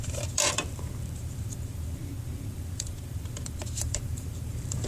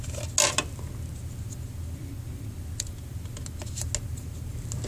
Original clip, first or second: second